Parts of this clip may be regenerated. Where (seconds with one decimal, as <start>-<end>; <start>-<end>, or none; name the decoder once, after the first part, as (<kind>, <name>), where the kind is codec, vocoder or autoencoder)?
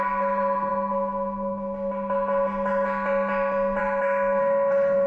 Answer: 4.4-5.1 (autoencoder, DAC-VAE)